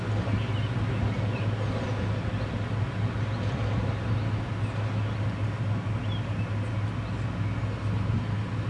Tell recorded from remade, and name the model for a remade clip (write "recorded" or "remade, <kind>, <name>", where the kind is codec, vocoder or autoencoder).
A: recorded